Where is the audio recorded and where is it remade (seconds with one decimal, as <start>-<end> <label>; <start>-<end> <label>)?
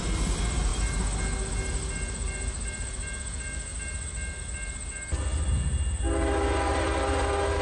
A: 0.0-7.6 recorded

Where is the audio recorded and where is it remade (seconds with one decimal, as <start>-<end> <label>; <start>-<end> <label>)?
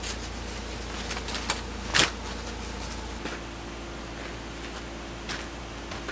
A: 0.0-6.1 recorded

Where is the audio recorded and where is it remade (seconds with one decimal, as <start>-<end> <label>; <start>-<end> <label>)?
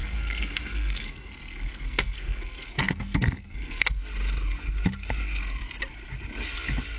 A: 0.0-4.0 remade; 4.0-7.0 recorded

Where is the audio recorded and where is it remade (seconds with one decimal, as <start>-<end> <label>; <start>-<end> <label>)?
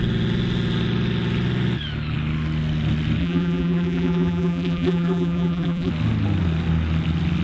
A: 0.0-3.2 recorded; 3.2-5.9 remade; 5.9-7.4 recorded